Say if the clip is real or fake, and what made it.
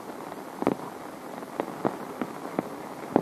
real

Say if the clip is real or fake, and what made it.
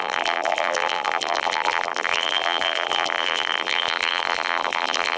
fake, vocoder, BigVGAN v2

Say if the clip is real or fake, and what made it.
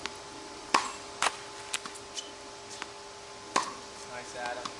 real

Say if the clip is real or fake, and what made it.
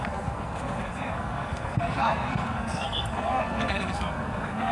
fake, codec, SNAC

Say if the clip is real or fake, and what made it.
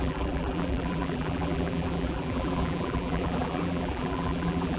fake, vocoder, BigVGAN v2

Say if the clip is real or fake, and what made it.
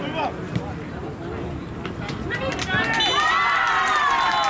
real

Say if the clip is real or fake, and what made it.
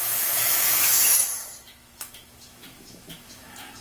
fake, autoencoder, DAC-VAE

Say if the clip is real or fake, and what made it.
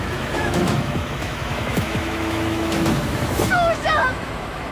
fake, autoencoder, DAC-VAE